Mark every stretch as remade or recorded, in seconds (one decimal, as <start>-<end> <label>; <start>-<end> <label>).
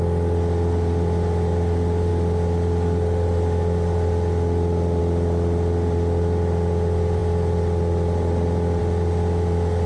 0.0-9.9 recorded